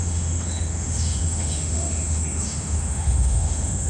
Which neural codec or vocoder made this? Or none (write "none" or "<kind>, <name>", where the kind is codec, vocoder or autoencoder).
autoencoder, DAC-VAE